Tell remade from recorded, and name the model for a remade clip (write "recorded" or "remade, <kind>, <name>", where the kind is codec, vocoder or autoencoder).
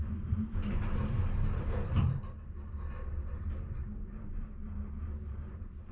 remade, vocoder, BigVGAN v2